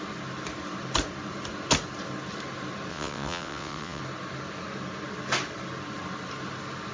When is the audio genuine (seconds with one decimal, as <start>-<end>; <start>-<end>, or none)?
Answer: 0.0-2.9; 4.0-6.9